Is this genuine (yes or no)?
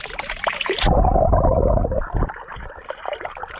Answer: yes